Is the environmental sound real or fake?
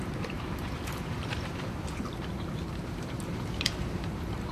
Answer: fake